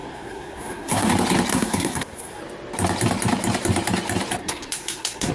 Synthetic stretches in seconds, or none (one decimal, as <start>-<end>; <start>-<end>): 0.0-1.1; 1.5-2.4; 4.4-5.3